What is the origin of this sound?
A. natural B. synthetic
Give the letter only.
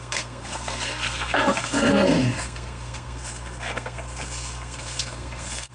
B